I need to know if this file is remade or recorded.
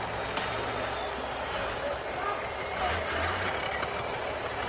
recorded